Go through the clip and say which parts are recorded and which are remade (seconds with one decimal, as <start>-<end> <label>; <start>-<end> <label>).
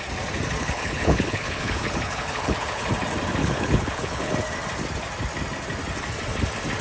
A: 0.0-0.6 recorded; 0.6-2.9 remade; 2.9-3.4 recorded; 3.4-4.3 remade; 4.3-6.8 recorded